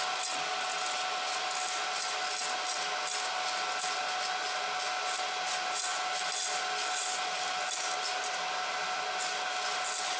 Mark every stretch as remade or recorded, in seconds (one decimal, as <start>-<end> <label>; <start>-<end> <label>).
0.0-10.2 recorded